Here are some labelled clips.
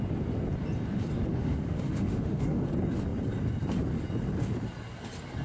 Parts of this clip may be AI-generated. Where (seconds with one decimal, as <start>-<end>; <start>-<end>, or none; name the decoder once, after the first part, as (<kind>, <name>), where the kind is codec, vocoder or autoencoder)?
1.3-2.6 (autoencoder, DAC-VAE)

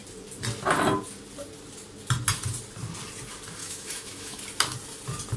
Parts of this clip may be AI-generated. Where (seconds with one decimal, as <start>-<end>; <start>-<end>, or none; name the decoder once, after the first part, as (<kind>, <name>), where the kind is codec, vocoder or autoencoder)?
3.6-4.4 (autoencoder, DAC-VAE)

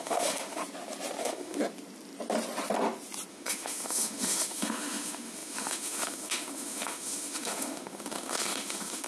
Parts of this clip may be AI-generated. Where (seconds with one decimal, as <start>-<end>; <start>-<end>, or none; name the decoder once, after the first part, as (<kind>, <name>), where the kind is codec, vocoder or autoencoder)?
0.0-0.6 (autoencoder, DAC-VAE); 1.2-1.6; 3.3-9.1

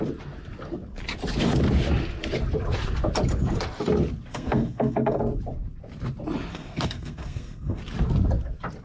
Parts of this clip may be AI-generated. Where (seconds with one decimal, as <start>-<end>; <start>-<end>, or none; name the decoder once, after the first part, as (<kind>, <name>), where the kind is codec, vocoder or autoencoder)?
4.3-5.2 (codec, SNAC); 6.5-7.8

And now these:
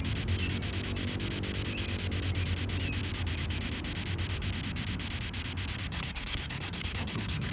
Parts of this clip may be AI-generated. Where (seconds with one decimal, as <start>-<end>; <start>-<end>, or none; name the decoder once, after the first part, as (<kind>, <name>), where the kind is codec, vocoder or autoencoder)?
5.9-7.5 (codec, SNAC)

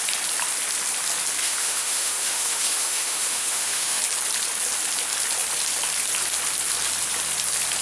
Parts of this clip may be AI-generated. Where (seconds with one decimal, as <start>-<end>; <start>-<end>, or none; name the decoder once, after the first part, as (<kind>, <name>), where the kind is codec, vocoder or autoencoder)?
1.4-4.0 (autoencoder, DAC-VAE)

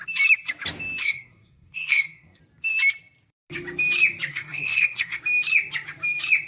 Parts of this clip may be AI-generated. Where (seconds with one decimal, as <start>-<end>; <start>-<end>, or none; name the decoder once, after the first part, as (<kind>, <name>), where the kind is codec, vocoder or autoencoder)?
1.0-2.4 (codec, SNAC); 4.3-5.2

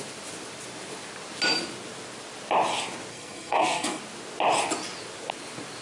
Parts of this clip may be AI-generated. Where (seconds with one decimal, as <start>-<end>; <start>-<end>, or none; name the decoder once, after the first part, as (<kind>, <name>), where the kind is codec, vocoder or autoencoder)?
3.1-4.0 (codec, SNAC)